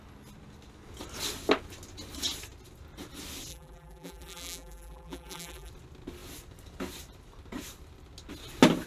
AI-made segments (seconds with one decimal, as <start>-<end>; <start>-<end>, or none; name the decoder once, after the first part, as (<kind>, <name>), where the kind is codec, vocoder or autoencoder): 3.5-5.7 (vocoder, BigVGAN v2)